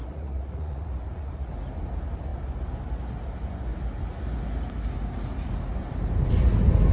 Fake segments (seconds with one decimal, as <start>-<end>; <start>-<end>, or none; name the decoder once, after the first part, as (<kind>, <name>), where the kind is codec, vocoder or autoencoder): 0.0-1.5 (vocoder, Vocos)